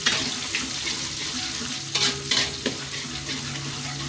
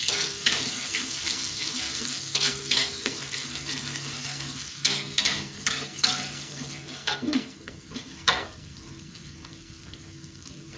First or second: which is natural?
first